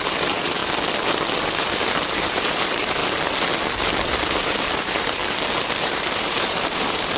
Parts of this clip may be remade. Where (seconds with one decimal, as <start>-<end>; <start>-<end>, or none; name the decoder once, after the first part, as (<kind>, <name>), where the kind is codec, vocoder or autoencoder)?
0.0-0.6 (vocoder, BigVGAN v2); 1.6-3.0; 4.2-5.2; 5.8-7.2